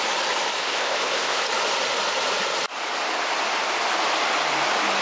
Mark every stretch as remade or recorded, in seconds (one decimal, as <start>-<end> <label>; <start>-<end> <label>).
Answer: 0.0-0.6 recorded; 0.6-1.4 remade; 1.4-5.0 recorded

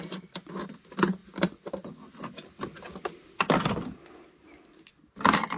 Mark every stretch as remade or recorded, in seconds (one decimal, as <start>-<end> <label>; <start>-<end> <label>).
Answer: 0.0-5.6 recorded

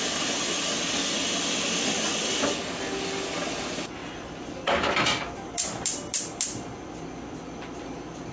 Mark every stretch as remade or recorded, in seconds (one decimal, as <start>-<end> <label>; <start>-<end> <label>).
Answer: 0.0-8.3 recorded

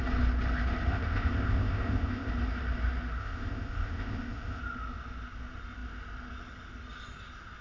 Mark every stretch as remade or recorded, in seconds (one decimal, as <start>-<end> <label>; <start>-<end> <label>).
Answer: 0.0-0.9 recorded; 0.9-2.3 remade; 2.3-3.2 recorded; 3.2-4.6 remade; 4.6-7.6 recorded

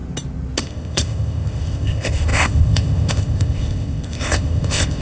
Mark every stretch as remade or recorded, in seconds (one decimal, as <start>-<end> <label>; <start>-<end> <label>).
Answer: 0.0-0.6 recorded; 0.6-5.0 remade

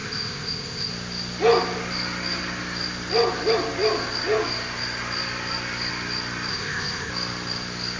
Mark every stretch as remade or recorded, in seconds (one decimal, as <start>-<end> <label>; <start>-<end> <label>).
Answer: 0.0-0.9 remade; 0.9-6.5 recorded; 6.5-7.1 remade; 7.1-8.0 recorded